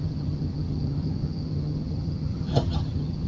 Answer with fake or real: fake